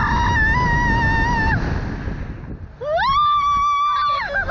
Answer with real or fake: real